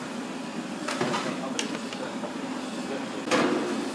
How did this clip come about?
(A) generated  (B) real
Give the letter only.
B